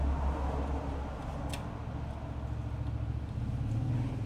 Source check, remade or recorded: recorded